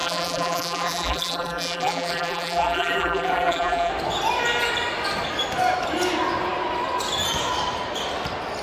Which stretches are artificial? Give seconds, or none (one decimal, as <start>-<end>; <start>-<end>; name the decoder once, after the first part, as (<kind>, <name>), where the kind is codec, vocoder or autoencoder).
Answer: 0.0-3.9 (vocoder, BigVGAN v2)